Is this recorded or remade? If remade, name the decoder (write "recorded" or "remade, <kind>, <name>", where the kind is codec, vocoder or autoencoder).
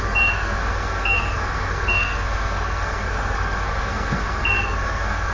remade, codec, SNAC